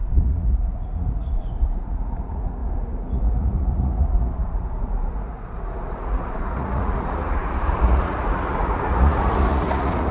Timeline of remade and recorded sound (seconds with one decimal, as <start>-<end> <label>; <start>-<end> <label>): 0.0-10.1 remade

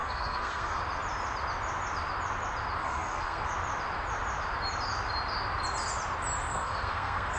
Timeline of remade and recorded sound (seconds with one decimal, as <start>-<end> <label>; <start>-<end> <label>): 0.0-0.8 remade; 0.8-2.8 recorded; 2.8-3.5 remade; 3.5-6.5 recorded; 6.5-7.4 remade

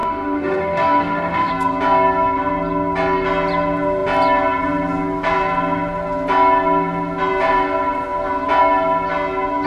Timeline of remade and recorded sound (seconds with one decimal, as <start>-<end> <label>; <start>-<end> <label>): 0.0-1.5 remade; 1.5-9.7 recorded

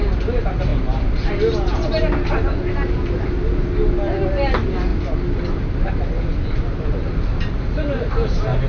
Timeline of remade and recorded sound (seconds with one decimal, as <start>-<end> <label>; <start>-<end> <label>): 0.0-8.7 recorded

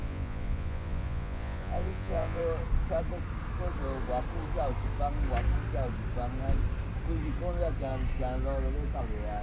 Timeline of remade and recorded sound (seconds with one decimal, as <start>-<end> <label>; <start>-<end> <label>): 0.0-2.4 remade; 2.4-9.4 recorded

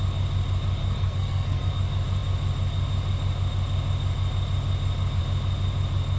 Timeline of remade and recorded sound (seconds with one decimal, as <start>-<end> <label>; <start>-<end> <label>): 0.0-0.8 recorded; 0.8-1.7 remade; 1.7-6.2 recorded

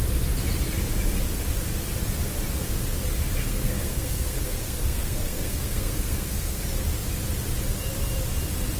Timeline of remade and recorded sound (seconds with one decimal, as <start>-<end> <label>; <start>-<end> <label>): 0.0-3.4 recorded; 3.4-6.6 remade; 6.6-8.8 recorded